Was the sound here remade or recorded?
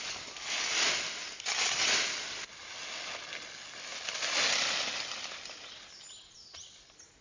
recorded